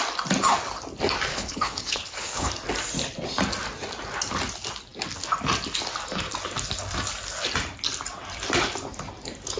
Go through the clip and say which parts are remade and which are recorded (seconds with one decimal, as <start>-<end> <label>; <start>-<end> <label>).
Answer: 0.0-1.3 recorded; 1.3-2.5 remade; 2.5-9.6 recorded